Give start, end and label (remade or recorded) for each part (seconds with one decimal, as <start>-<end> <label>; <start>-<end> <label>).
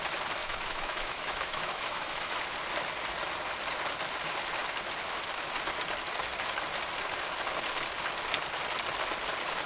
0.0-0.4 recorded; 0.4-2.4 remade; 2.4-9.7 recorded